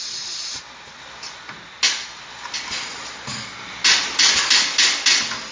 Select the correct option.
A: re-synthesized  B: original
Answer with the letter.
B